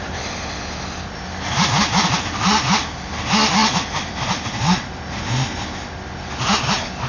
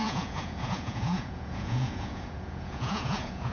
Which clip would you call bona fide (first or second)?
first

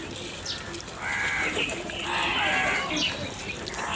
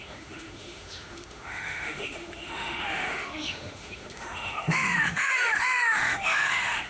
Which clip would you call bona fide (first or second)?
first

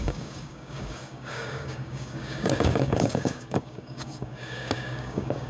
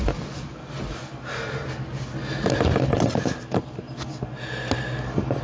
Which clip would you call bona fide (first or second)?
second